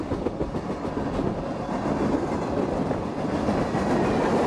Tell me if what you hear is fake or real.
real